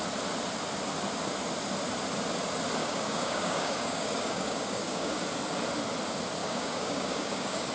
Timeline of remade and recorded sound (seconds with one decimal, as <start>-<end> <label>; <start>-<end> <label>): 0.0-2.8 recorded; 2.8-5.2 remade; 5.2-6.4 recorded; 6.4-7.7 remade